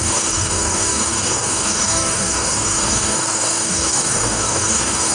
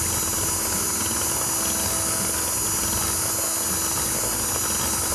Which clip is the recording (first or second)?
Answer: second